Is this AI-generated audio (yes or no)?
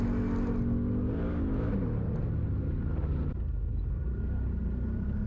no